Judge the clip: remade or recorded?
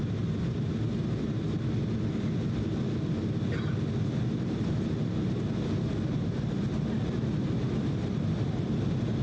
recorded